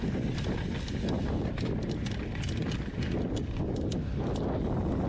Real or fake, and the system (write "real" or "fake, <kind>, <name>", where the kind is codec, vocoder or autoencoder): real